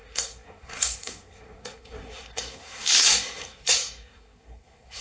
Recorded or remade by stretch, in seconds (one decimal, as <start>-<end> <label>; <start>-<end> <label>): 0.0-5.0 remade